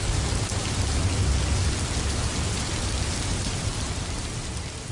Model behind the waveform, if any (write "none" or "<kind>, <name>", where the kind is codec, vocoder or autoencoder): none